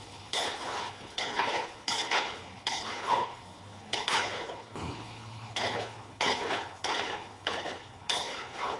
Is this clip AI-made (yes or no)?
yes